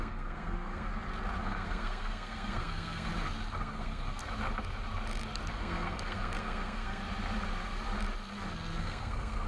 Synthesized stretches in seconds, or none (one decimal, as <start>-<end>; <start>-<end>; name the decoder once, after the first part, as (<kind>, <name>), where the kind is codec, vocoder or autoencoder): 0.0-0.9 (codec, SNAC); 1.4-3.1; 3.6-4.2; 5.5-7.0; 8.8-9.5